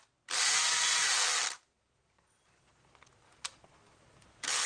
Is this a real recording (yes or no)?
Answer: yes